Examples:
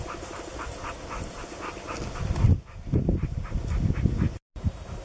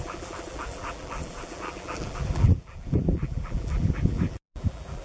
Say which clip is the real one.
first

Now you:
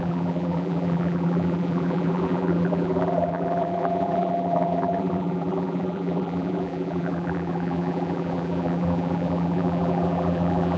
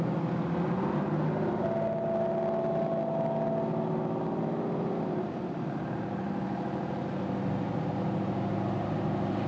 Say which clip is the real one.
second